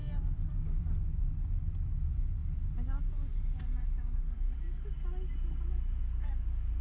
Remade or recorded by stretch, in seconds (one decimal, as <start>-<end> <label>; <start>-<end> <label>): 0.0-6.8 recorded